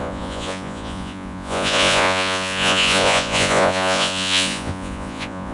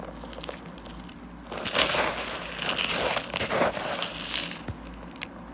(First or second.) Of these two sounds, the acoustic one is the second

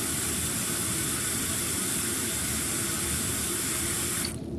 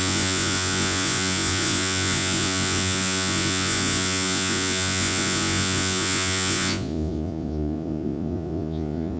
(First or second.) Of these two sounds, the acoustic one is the first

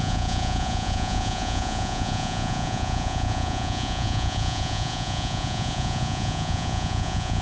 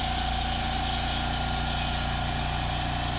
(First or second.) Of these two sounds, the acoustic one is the second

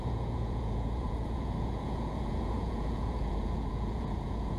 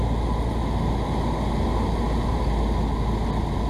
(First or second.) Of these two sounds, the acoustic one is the second